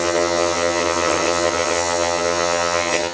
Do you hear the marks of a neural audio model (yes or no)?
yes